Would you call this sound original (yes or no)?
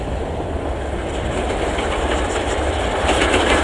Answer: yes